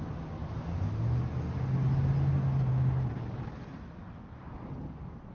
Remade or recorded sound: recorded